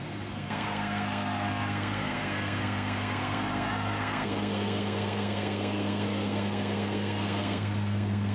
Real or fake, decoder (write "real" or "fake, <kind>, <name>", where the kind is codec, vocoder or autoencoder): fake, codec, SNAC